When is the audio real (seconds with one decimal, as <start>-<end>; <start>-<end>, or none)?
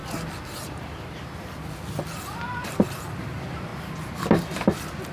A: 3.1-5.1